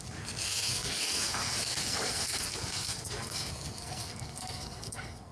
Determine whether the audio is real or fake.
fake